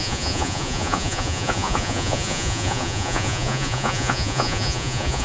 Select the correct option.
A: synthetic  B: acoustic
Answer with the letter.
A